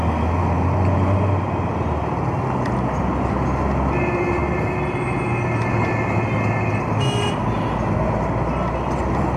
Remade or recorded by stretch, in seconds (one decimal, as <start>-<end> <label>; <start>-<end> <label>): 0.0-9.4 recorded